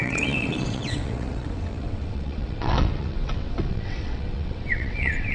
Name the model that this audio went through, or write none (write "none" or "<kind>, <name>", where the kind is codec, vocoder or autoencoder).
vocoder, WaveNeXt